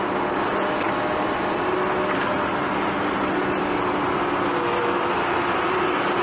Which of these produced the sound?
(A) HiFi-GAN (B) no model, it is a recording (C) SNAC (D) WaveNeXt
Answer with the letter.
B